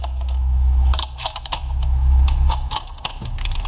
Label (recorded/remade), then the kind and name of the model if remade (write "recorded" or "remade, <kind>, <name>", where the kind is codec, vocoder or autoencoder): remade, autoencoder, DAC-VAE